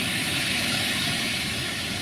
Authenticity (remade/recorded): remade